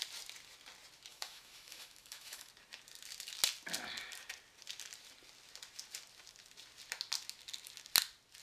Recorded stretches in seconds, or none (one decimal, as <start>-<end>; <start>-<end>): 0.0-1.1; 2.5-8.4